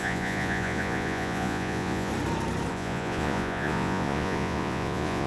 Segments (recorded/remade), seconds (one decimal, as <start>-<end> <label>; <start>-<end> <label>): 0.0-2.1 remade; 2.1-2.7 recorded; 2.7-5.3 remade